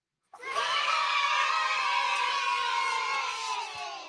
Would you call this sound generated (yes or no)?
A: yes